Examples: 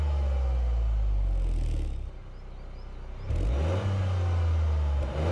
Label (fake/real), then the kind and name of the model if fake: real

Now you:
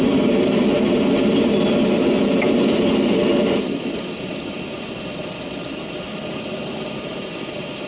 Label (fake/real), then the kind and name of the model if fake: real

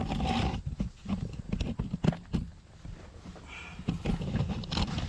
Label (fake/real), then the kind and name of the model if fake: real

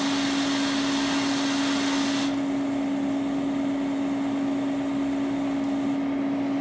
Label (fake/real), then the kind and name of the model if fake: real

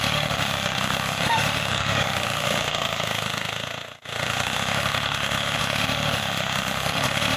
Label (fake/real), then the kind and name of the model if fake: fake, autoencoder, DAC-VAE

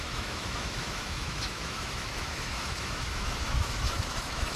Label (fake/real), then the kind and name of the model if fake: fake, autoencoder, DAC-VAE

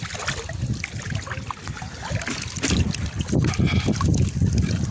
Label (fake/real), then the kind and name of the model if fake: real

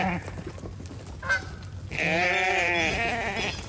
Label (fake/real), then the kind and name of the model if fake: real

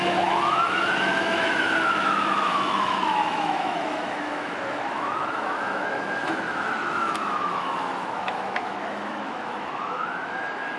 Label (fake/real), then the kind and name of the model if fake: fake, autoencoder, DAC-VAE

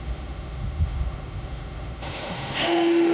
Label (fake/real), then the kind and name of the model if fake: fake, autoencoder, DAC-VAE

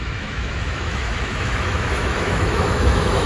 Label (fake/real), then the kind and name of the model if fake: fake, autoencoder, DAC-VAE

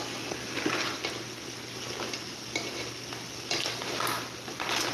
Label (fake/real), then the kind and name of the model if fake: real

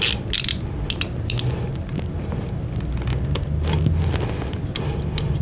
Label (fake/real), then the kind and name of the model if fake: real